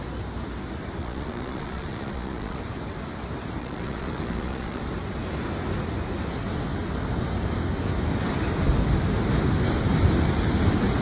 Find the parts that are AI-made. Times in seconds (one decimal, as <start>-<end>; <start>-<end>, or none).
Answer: 1.0-2.6; 3.6-4.8